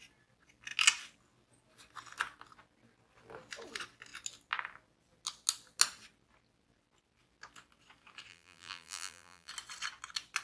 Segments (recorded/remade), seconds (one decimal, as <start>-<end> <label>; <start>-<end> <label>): 0.0-8.3 recorded; 8.3-9.5 remade; 9.5-10.4 recorded